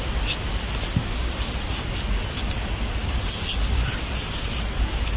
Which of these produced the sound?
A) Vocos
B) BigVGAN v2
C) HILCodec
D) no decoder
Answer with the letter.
D